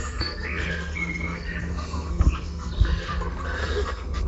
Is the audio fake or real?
fake